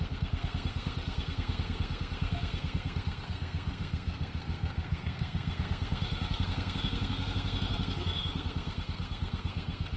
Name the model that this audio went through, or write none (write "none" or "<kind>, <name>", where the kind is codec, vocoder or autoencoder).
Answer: codec, SNAC